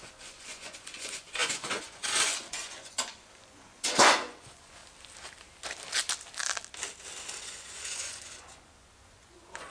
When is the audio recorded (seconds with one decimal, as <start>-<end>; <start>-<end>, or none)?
4.8-7.4